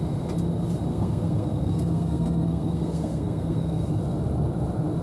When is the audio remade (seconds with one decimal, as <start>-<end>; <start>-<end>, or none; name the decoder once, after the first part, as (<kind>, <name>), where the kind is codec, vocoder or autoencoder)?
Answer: 0.9-3.9 (codec, SNAC)